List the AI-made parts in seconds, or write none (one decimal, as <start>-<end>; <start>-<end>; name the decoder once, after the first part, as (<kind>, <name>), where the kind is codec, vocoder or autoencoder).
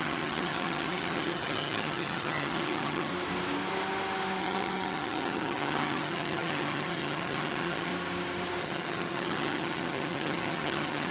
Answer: 0.0-3.1 (vocoder, HiFi-GAN); 4.4-7.9; 8.6-11.1